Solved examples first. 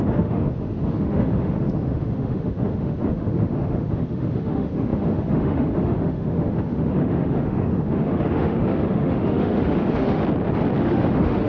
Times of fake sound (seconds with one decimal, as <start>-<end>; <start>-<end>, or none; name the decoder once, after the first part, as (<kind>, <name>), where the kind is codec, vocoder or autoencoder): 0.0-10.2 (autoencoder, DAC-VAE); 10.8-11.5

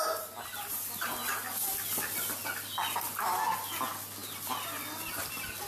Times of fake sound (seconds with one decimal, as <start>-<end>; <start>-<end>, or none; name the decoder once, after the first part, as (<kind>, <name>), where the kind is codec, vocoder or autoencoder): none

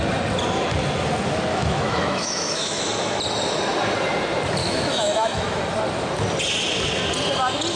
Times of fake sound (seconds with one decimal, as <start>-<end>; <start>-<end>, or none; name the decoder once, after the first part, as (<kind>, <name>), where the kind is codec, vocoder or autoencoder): 1.5-2.8 (autoencoder, DAC-VAE); 4.6-5.6

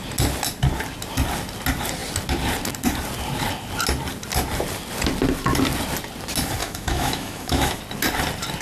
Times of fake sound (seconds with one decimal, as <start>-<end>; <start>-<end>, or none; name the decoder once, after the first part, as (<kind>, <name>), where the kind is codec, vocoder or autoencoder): 6.6-7.8 (autoencoder, DAC-VAE)

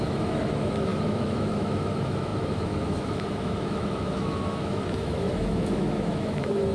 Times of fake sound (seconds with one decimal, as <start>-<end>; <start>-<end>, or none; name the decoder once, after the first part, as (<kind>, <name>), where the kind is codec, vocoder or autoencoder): 0.0-6.7 (autoencoder, DAC-VAE)

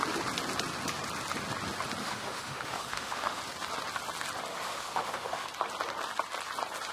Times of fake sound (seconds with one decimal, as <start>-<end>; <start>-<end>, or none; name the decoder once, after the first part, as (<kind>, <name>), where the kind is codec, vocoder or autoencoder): 2.0-3.4 (autoencoder, DAC-VAE); 4.5-5.5

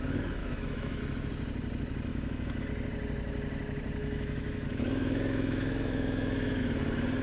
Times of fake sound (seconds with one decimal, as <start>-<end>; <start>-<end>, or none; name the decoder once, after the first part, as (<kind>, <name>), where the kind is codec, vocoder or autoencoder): 0.4-1.0 (autoencoder, DAC-VAE); 2.1-2.6; 4.0-6.6

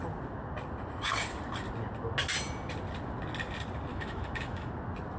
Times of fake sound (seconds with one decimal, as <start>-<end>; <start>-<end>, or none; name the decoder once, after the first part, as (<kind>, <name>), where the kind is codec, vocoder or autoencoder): 3.9-4.7 (autoencoder, DAC-VAE)